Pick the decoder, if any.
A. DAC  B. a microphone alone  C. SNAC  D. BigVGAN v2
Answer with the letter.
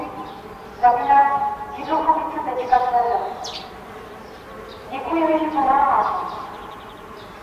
D